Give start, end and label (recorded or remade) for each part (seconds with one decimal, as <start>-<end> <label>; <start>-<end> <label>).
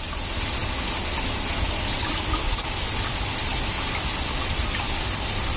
0.0-5.6 recorded